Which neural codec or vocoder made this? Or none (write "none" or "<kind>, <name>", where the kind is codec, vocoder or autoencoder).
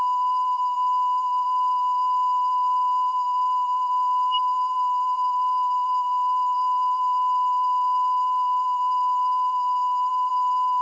vocoder, BigVGAN v2